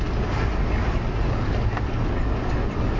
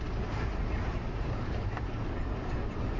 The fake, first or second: second